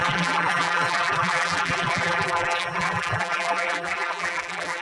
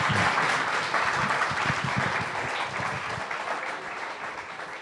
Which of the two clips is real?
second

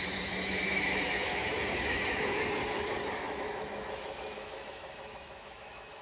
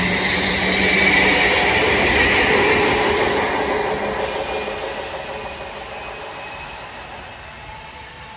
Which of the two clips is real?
second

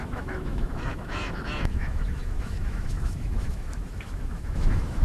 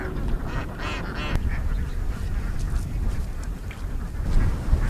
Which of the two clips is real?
second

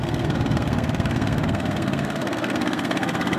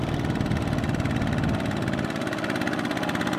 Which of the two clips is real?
second